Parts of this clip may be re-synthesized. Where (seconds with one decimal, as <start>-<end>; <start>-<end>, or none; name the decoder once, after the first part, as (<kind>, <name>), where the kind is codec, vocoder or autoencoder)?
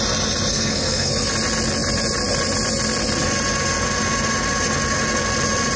0.5-1.1 (codec, SNAC)